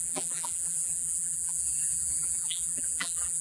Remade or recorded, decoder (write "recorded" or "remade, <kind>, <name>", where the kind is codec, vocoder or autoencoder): remade, vocoder, BigVGAN v2